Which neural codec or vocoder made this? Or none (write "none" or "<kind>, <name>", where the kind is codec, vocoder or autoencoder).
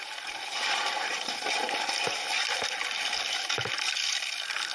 none